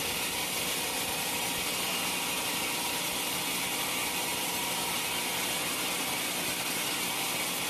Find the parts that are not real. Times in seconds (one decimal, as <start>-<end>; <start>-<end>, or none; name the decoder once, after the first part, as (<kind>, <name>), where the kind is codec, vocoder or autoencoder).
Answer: 4.3-4.9 (vocoder, BigVGAN v2)